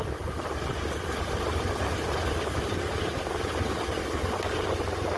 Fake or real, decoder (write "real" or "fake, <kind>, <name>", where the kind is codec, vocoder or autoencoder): real